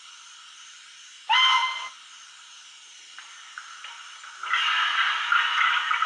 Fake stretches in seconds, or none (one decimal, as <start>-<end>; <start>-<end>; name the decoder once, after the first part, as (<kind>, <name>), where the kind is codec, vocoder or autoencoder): none